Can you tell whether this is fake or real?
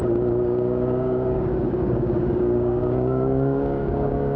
fake